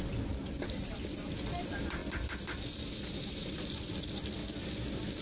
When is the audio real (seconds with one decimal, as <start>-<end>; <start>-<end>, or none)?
2.0-2.7; 4.4-5.2